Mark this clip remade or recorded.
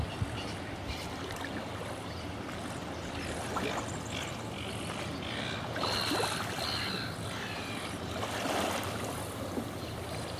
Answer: recorded